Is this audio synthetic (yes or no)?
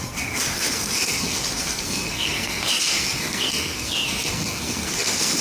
yes